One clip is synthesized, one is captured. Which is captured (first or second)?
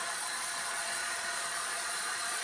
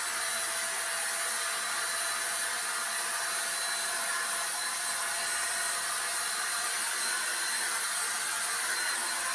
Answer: second